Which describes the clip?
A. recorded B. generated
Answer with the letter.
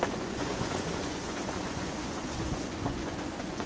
B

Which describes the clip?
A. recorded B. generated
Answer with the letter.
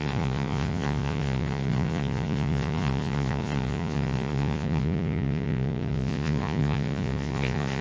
B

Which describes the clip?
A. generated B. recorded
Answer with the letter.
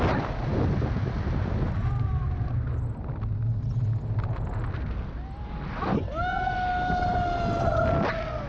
B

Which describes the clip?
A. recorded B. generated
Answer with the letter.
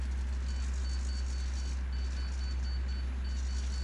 A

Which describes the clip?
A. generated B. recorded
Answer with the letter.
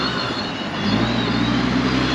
B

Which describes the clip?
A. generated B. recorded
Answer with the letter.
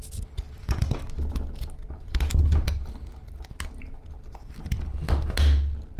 B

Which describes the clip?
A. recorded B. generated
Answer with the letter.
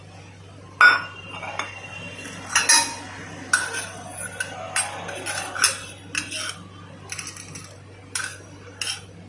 A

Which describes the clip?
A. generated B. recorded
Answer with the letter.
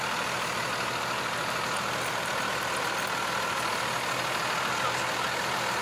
B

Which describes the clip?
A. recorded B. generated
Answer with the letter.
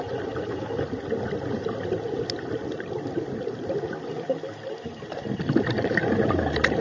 A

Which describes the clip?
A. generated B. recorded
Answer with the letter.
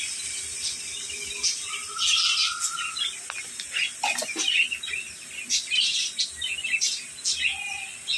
B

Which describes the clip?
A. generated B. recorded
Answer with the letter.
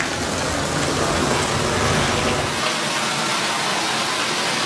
B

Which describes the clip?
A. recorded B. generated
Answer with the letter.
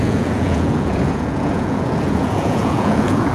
B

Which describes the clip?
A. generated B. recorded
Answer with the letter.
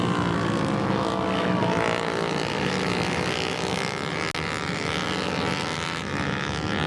B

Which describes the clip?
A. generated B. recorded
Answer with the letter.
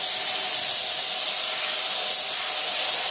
B